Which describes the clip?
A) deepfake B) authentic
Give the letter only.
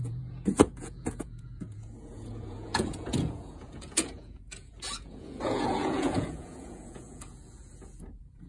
A